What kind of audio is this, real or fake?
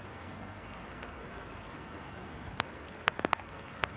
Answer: fake